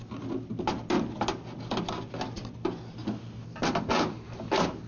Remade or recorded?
recorded